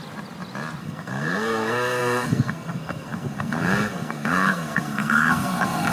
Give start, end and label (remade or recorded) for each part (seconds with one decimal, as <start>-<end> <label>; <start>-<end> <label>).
0.0-0.8 recorded; 0.8-5.9 remade